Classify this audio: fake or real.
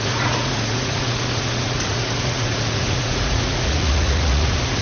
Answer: fake